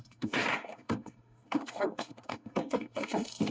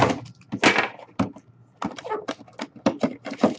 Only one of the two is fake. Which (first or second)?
first